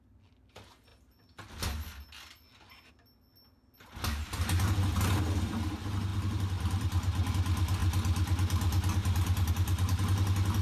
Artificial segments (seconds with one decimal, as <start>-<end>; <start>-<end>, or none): 6.1-7.3